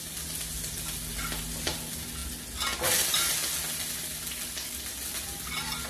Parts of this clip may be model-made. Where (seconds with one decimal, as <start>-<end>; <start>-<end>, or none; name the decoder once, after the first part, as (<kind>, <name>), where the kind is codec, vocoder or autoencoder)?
none